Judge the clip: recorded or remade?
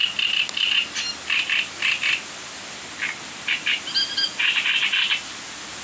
recorded